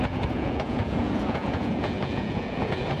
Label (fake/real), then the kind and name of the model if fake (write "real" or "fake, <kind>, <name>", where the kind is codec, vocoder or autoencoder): fake, vocoder, Vocos